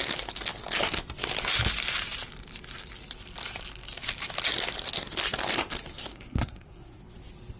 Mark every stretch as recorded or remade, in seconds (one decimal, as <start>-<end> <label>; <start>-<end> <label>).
0.0-5.9 recorded; 5.9-7.0 remade; 7.0-7.6 recorded